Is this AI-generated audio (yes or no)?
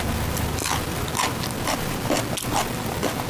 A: no